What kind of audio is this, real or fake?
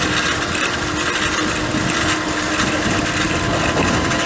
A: real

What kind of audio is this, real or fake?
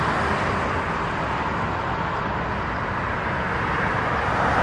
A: real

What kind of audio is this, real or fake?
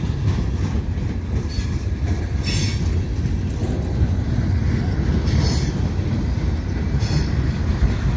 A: real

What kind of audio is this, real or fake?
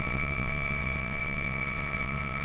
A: fake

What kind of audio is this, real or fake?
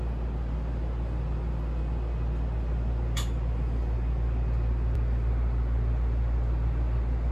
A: real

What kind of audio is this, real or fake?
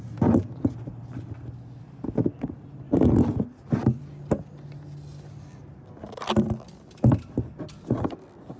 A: real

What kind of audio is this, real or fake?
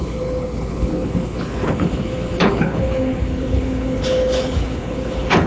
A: fake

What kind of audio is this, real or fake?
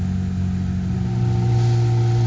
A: real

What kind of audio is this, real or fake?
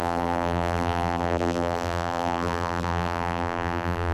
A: fake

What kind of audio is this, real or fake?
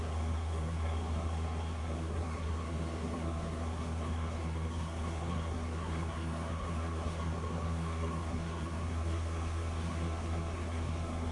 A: fake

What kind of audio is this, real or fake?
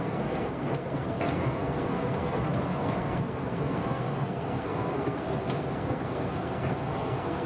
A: fake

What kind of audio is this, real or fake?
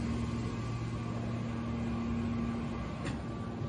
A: real